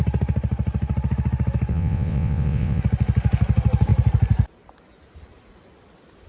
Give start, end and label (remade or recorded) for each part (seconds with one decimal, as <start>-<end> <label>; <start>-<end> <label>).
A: 0.0-1.7 recorded; 1.7-2.8 remade; 2.8-6.3 recorded